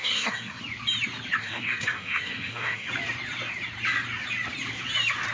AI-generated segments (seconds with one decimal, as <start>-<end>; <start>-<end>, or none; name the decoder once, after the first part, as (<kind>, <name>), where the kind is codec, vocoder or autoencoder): 0.0-0.6 (codec, SNAC); 1.4-2.9